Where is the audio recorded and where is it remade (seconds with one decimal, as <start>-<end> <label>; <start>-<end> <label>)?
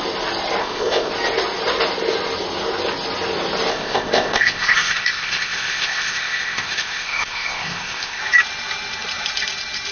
0.0-0.6 recorded; 0.6-1.1 remade; 1.1-3.7 recorded; 3.7-8.2 remade; 8.2-9.9 recorded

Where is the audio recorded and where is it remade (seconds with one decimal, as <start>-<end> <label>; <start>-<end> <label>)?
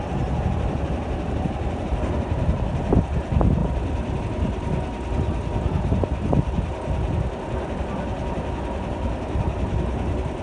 0.0-10.4 recorded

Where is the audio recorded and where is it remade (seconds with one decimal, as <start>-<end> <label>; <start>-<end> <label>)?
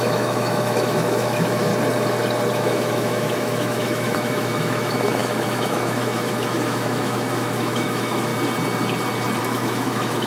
0.0-1.7 remade; 1.7-2.5 recorded; 2.5-8.3 remade; 8.3-9.4 recorded; 9.4-10.3 remade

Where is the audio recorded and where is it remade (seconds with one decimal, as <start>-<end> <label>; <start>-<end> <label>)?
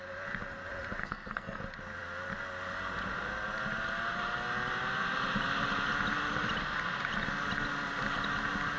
0.0-1.0 recorded; 1.0-1.6 remade; 1.6-8.8 recorded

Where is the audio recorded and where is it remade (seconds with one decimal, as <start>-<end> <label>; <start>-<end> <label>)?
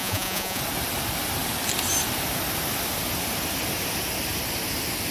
0.0-0.6 remade; 0.6-5.1 recorded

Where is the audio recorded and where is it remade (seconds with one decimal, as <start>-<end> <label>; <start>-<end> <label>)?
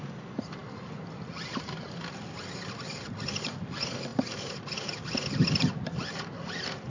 0.0-6.9 recorded